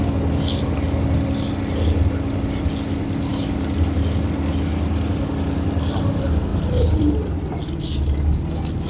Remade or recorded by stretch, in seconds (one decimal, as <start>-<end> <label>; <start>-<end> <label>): 0.0-3.3 recorded; 3.3-4.0 remade; 4.0-6.5 recorded; 6.5-7.6 remade; 7.6-8.9 recorded